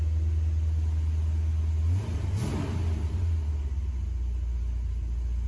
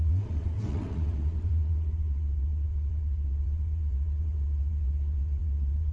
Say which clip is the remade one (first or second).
second